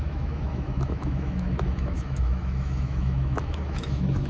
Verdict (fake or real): fake